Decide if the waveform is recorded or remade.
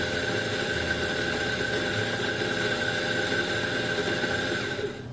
recorded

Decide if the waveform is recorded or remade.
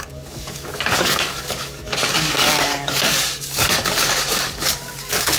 remade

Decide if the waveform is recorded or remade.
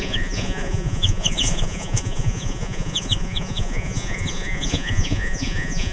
remade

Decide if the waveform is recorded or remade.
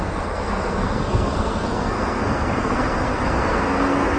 remade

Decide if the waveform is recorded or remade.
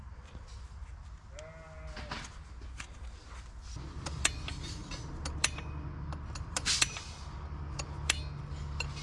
recorded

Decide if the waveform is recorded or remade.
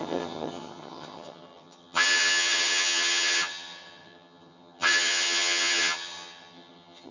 remade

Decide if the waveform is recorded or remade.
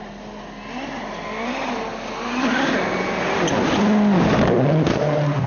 recorded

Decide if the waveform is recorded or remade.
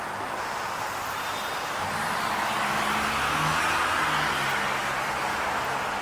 recorded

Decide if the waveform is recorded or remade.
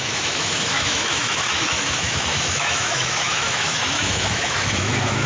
remade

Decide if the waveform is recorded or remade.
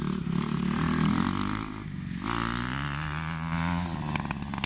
recorded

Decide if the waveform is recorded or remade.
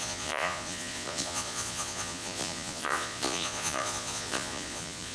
remade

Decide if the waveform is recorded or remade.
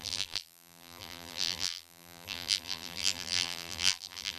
remade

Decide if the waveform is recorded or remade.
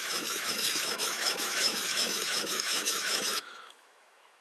remade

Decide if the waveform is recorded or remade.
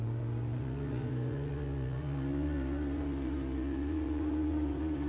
remade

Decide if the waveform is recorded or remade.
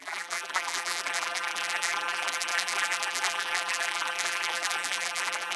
remade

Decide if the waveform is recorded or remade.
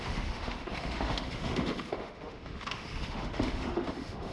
remade